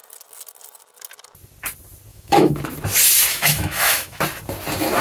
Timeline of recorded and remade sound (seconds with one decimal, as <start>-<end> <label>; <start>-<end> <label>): 0.0-2.1 recorded; 2.1-2.6 remade; 2.6-3.3 recorded; 3.3-4.2 remade; 4.2-5.0 recorded